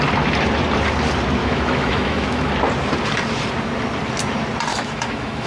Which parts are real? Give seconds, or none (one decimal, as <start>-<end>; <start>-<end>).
0.0-1.4; 2.5-4.7